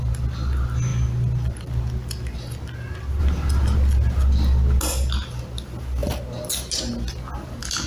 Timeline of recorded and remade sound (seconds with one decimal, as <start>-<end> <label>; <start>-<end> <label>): 0.0-7.9 recorded